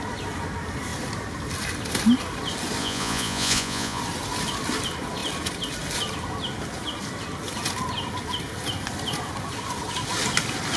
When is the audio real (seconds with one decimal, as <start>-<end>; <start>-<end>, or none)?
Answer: 0.0-2.8; 4.0-10.8